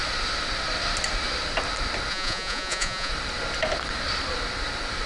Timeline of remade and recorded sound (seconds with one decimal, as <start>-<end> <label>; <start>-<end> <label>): 0.0-2.1 recorded; 2.1-3.1 remade; 3.1-5.1 recorded